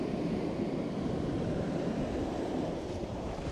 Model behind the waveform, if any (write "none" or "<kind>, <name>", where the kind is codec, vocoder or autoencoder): vocoder, BigVGAN v2